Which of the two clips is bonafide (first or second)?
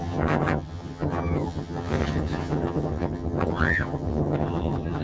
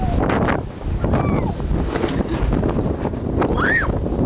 second